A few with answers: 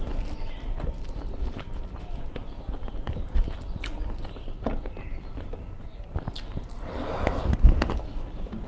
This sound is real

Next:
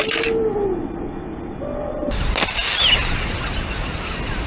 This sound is real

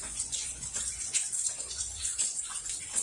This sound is fake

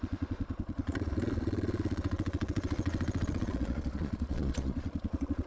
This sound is fake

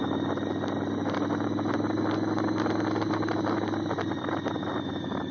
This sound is real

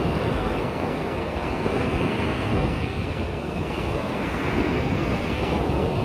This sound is fake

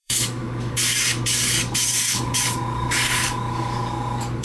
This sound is fake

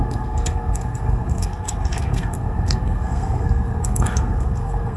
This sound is fake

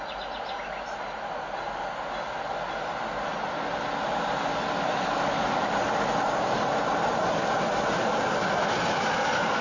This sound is real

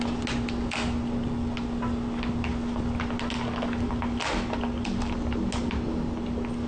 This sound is real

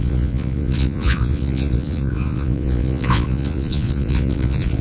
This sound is fake